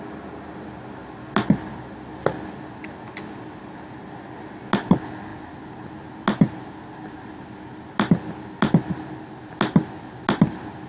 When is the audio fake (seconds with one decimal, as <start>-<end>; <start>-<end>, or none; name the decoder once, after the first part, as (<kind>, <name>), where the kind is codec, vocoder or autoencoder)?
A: none